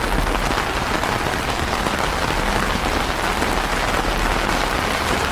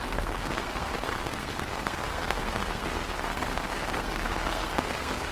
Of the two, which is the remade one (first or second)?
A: second